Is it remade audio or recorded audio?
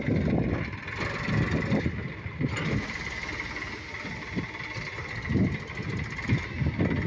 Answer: recorded